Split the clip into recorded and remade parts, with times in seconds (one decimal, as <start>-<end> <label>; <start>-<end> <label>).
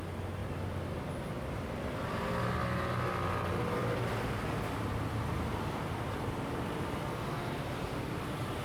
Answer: 0.0-0.4 recorded; 0.4-2.1 remade; 2.1-3.8 recorded; 3.8-8.6 remade